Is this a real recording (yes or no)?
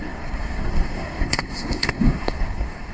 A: no